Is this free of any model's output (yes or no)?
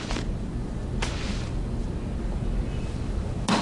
yes